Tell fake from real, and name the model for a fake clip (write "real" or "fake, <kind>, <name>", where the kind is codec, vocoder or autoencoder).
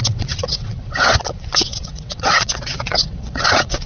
fake, vocoder, WaveNeXt